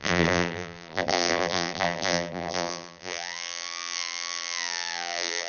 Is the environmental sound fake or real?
fake